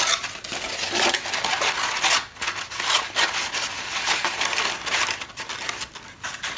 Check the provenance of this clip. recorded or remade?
recorded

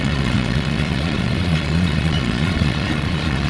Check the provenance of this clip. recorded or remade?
remade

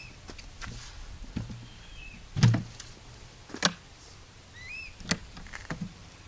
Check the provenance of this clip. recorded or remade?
recorded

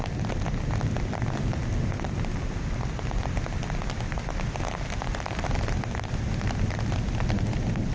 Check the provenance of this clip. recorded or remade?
recorded